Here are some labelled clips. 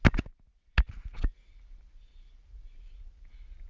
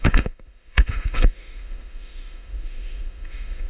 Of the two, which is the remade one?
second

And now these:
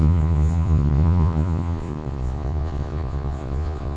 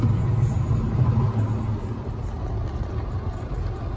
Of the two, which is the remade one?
first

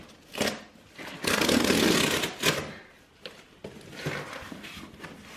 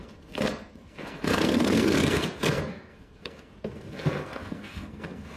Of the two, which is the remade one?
second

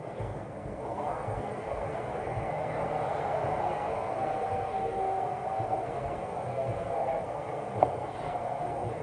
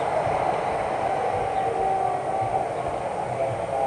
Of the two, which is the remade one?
first